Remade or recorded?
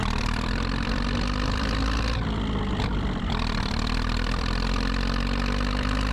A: remade